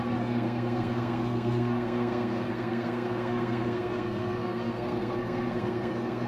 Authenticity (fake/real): fake